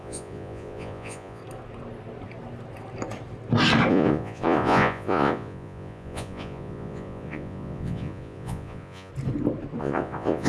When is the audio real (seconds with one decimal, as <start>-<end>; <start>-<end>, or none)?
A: 1.4-3.9; 9.1-9.8